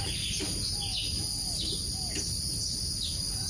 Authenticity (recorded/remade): recorded